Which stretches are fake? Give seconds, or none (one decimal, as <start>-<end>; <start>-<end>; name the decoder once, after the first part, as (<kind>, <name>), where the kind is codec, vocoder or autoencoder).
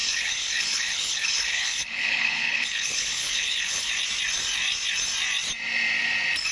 0.0-3.9 (codec, HILCodec)